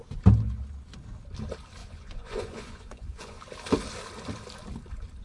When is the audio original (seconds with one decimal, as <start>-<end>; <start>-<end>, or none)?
0.0-1.8; 3.4-5.2